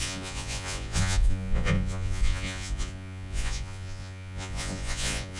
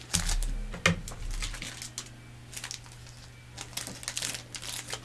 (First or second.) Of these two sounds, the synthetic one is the first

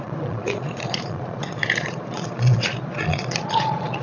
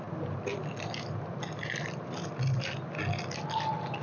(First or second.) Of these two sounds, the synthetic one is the first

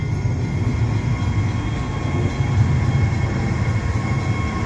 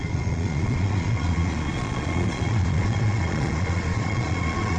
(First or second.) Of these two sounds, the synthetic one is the second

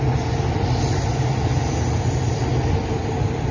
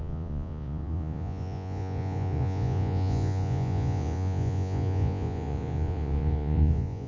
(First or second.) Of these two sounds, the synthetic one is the second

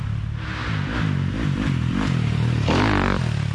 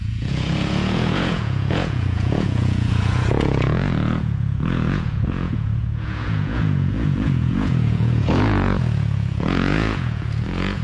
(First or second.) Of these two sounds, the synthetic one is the second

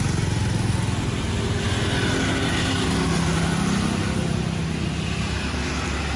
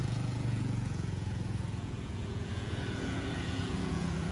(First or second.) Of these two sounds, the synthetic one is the second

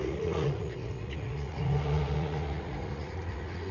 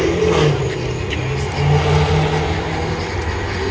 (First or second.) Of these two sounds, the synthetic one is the first